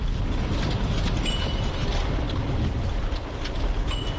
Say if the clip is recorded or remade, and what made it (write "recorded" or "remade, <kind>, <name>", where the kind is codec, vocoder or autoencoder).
recorded